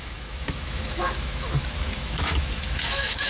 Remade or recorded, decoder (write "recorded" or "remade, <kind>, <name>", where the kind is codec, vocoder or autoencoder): remade, autoencoder, DAC-VAE